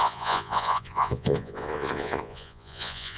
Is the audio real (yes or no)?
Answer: no